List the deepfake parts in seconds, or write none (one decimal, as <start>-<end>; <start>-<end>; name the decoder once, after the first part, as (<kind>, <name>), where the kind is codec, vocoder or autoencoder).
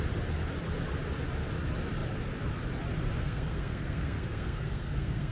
3.2-5.3 (codec, SNAC)